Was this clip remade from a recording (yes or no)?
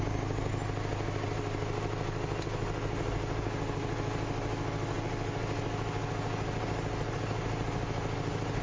no